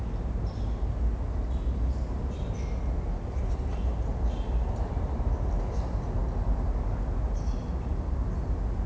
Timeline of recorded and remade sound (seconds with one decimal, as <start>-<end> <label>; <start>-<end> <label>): 0.0-8.9 recorded